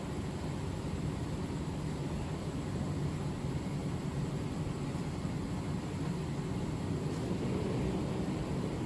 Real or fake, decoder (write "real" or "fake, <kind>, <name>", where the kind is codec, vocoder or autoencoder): real